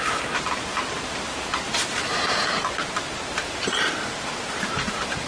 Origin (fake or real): fake